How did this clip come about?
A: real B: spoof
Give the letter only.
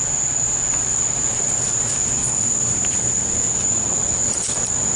A